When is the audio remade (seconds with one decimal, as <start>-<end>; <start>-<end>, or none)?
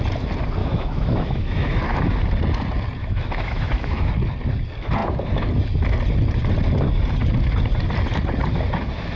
0.6-1.8; 3.0-4.1